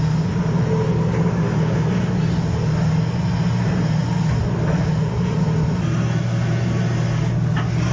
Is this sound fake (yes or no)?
no